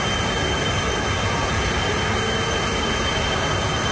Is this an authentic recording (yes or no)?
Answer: yes